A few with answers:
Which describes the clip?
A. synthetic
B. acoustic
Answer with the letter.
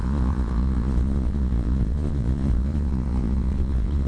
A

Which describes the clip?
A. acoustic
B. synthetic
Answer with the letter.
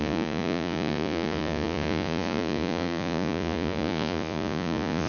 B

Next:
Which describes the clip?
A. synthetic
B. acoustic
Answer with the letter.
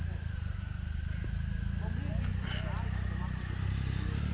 B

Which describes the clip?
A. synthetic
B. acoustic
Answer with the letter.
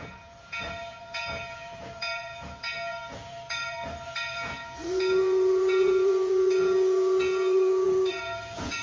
A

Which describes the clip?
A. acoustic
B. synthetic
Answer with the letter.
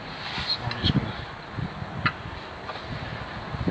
A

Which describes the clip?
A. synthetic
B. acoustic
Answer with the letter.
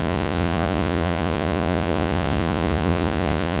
A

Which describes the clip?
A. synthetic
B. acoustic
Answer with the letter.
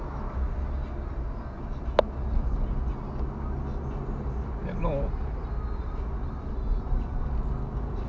B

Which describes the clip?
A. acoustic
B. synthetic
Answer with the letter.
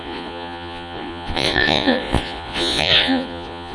B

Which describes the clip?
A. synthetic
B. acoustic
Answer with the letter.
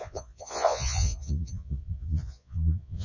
A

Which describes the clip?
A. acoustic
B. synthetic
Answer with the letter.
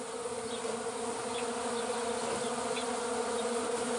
A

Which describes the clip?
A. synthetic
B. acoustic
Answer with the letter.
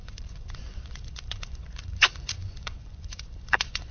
A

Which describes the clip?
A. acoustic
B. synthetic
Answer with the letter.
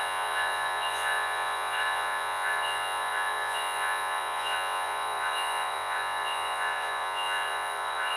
B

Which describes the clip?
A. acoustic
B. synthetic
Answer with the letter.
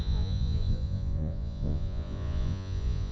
B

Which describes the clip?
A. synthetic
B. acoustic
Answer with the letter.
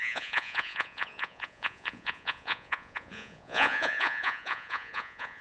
A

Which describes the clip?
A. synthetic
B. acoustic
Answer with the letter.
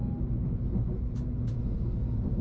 B